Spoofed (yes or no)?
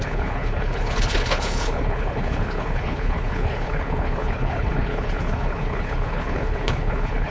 yes